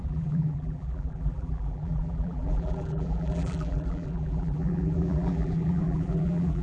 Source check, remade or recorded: remade